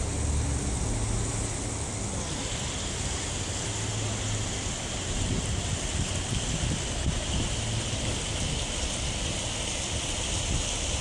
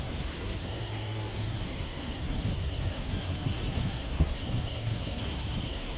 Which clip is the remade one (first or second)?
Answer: second